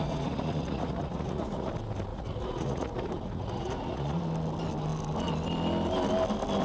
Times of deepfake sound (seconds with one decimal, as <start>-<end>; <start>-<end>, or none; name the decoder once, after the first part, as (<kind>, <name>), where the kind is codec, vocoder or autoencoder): 0.0-1.7 (vocoder, Vocos); 2.1-4.2